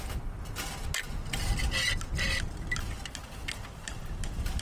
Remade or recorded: recorded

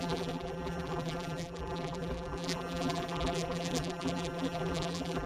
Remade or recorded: remade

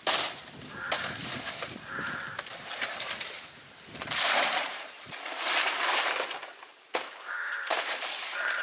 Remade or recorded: remade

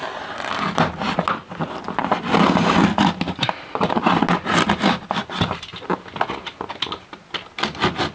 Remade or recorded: recorded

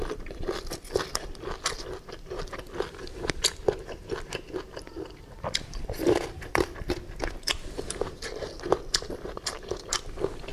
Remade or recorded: remade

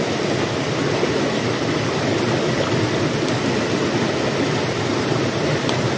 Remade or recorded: recorded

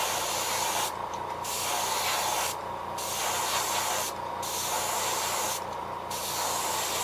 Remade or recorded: recorded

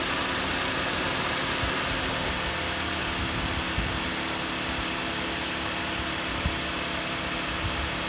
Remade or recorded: recorded